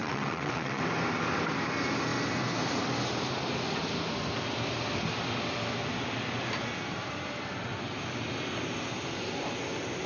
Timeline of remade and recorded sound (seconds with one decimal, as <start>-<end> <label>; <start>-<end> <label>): 0.0-0.8 remade; 0.8-10.1 recorded